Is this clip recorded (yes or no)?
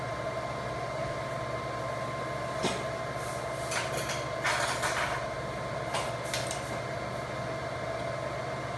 yes